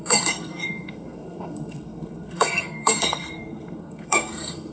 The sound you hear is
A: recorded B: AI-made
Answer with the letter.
B